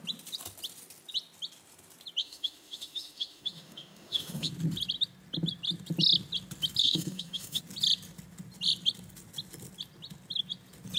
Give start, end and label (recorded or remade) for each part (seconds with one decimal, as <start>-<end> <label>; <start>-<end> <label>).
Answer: 0.0-2.2 recorded; 2.2-4.5 remade; 4.5-6.8 recorded; 6.8-7.6 remade; 7.6-11.0 recorded

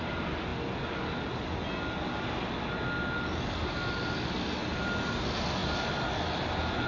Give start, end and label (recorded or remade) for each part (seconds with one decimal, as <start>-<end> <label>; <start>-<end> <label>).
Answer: 0.0-6.9 recorded